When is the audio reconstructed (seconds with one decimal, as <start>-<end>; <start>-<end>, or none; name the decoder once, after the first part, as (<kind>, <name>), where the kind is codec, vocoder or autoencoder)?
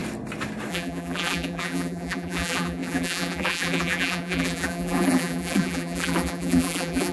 0.7-7.1 (vocoder, BigVGAN v2)